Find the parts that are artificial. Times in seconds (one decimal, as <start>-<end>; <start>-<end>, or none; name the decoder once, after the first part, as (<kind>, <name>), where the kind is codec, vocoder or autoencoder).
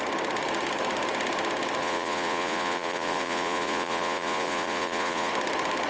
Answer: 1.8-5.3 (vocoder, Vocos)